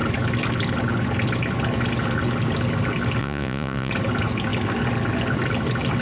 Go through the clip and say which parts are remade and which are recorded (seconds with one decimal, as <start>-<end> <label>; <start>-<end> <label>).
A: 0.0-3.2 recorded; 3.2-3.9 remade; 3.9-6.0 recorded